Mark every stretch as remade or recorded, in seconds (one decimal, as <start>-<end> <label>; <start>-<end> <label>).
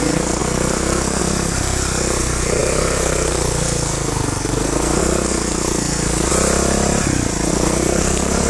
0.0-6.3 remade; 6.3-7.5 recorded; 7.5-8.5 remade